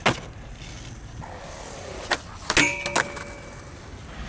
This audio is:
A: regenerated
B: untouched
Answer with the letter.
B